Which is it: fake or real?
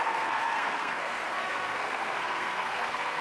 fake